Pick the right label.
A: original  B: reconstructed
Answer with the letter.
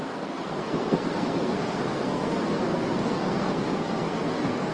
B